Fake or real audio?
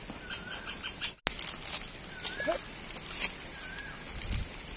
real